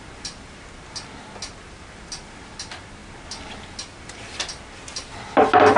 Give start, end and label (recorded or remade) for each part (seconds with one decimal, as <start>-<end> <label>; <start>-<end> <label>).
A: 0.0-5.8 recorded